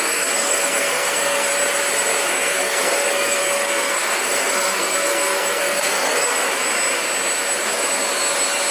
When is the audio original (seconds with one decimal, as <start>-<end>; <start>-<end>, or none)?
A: 1.5-2.3; 6.5-8.7